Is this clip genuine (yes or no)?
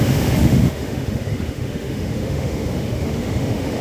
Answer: no